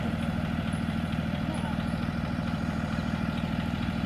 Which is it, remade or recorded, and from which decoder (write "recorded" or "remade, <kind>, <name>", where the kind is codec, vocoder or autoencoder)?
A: remade, vocoder, BigVGAN v2